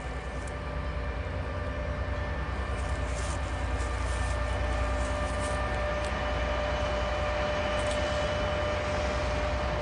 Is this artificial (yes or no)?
no